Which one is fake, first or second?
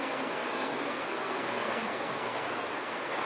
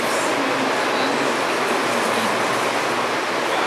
first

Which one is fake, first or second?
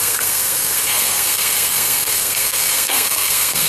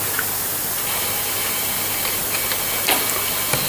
first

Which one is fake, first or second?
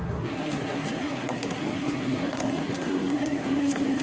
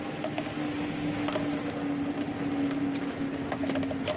first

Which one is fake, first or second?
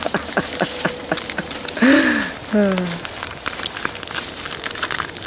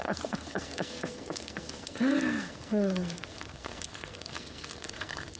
second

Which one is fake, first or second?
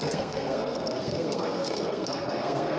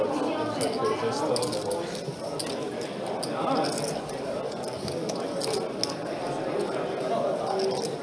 first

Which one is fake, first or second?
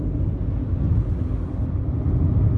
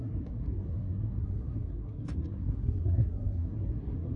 second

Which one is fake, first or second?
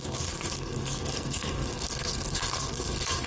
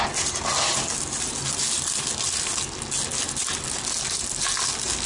first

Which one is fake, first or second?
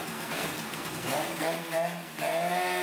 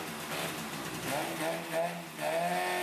first